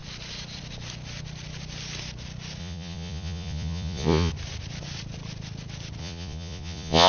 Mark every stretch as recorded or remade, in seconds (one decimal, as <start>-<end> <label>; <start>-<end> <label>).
0.0-2.6 recorded; 2.6-4.3 remade; 4.3-6.0 recorded; 6.0-7.1 remade